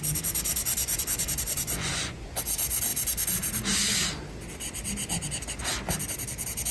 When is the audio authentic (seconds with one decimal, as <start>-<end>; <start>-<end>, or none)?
0.0-0.8; 2.4-6.7